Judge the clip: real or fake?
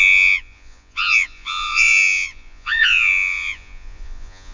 fake